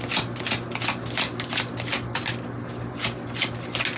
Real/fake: real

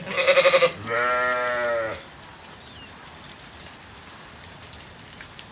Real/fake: real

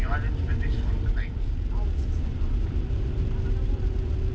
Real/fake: fake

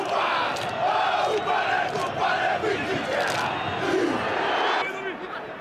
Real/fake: real